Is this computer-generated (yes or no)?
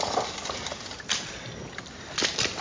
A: no